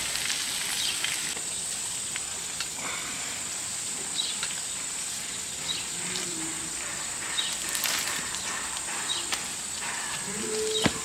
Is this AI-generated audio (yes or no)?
no